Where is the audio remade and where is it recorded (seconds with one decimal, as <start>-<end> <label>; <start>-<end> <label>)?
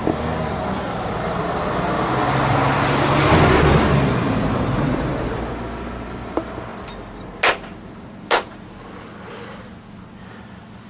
0.0-4.2 recorded; 4.2-5.1 remade; 5.1-10.9 recorded